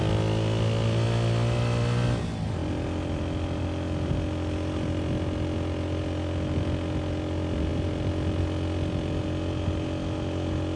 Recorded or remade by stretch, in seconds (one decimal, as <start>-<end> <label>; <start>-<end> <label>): 0.0-10.8 recorded